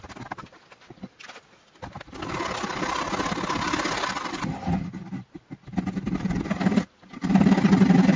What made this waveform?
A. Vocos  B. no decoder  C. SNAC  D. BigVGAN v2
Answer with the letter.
B